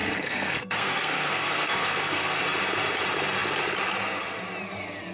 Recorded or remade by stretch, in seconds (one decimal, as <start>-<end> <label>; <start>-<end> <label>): 0.0-2.4 remade; 2.4-5.1 recorded